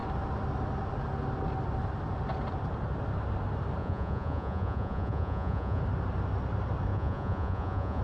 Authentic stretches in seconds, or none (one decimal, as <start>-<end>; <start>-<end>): 0.0-3.8; 5.8-6.9